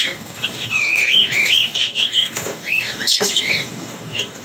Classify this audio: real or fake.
fake